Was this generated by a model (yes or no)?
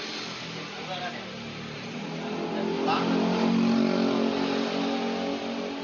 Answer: no